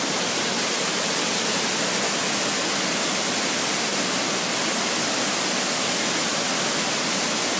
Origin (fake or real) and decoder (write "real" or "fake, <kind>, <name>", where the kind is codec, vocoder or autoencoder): real